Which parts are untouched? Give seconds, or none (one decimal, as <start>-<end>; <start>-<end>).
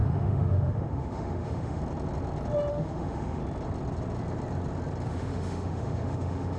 1.8-2.7; 3.4-5.1